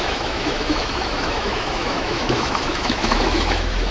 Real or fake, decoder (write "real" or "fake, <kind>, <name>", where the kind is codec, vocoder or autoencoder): fake, autoencoder, DAC-VAE